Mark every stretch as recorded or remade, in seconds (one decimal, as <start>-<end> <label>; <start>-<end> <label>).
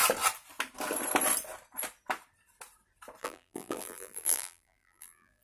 0.0-3.2 recorded; 3.2-5.4 remade